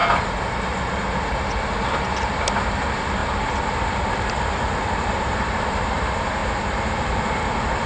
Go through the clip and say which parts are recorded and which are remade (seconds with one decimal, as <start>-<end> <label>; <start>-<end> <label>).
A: 0.0-2.1 recorded; 2.1-3.2 remade; 3.2-4.3 recorded; 4.3-6.4 remade; 6.4-7.1 recorded; 7.1-7.9 remade